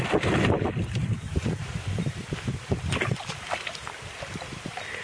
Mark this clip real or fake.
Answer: real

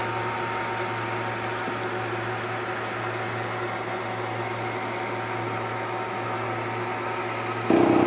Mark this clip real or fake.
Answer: real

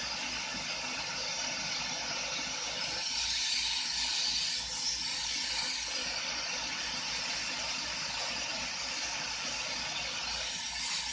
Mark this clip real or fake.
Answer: real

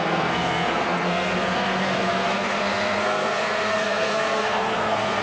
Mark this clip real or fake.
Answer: fake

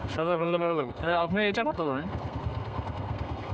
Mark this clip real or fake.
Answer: fake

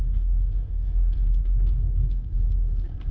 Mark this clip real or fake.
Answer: fake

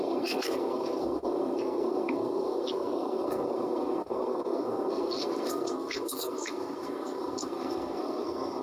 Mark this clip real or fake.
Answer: fake